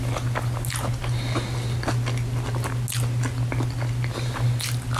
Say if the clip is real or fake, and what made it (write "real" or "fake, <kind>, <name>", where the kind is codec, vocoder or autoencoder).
real